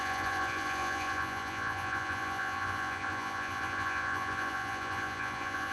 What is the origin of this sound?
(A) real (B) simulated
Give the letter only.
B